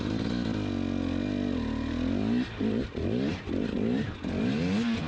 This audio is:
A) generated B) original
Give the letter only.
B